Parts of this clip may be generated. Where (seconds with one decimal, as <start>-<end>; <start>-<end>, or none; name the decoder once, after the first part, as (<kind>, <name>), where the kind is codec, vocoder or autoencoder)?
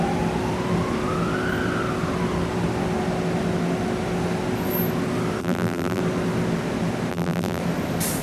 5.4-6.0 (vocoder, BigVGAN v2); 7.1-7.6